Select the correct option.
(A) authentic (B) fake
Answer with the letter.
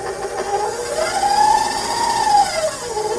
A